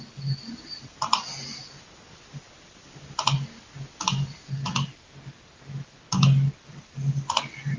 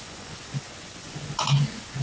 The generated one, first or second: second